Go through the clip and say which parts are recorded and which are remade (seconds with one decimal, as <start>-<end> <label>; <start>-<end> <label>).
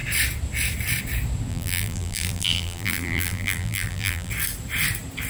0.0-1.5 recorded; 1.5-4.3 remade; 4.3-5.3 recorded